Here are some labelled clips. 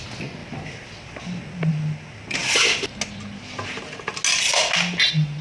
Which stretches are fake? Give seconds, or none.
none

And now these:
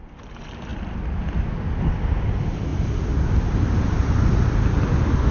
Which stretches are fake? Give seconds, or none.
none

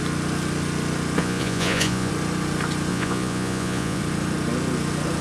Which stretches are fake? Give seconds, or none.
1.2-2.1 (vocoder, Vocos); 2.9-4.0

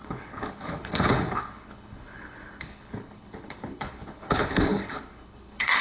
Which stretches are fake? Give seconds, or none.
0.0-5.8 (codec, HILCodec)

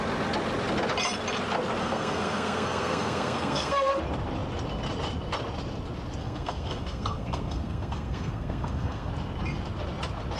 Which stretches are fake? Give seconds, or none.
1.8-3.9 (codec, SNAC); 6.2-9.1